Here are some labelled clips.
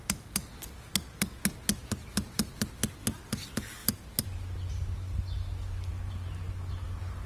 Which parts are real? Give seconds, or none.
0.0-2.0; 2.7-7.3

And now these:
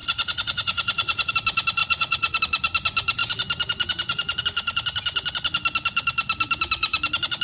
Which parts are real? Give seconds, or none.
1.3-1.8; 2.4-7.4

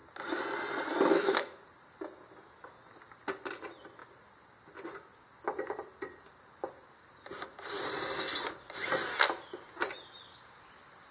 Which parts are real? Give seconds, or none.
0.0-1.1; 1.6-11.1

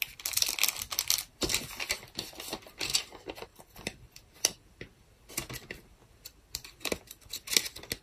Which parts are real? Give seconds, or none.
0.0-3.5; 4.1-8.0

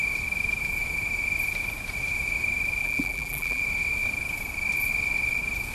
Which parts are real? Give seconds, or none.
0.0-2.8; 3.6-5.7